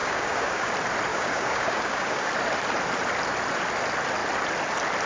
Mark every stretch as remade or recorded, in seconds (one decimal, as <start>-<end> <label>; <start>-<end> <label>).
0.0-0.7 remade; 0.7-1.1 recorded; 1.1-2.3 remade; 2.3-5.1 recorded

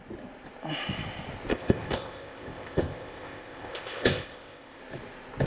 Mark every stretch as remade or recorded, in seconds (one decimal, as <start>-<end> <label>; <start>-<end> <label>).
0.0-1.5 recorded; 1.5-4.8 remade; 4.8-5.5 recorded

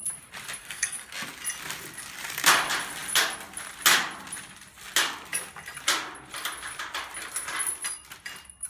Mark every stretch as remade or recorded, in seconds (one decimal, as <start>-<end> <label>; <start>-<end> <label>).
0.0-0.6 recorded; 0.6-1.1 remade; 1.1-8.7 recorded

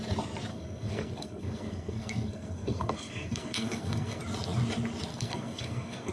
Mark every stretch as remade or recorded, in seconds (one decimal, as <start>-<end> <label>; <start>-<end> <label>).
0.0-0.5 recorded; 0.5-4.2 remade; 4.2-5.1 recorded; 5.1-6.1 remade

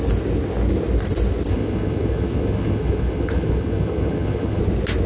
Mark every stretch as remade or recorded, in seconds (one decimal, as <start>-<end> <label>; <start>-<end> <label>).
0.0-1.5 recorded; 1.5-4.6 remade; 4.6-5.1 recorded